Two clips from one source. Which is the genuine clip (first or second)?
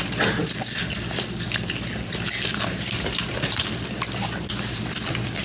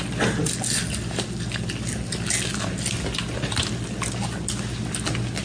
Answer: second